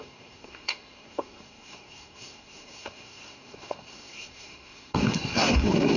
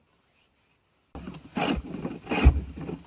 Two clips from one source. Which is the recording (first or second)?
second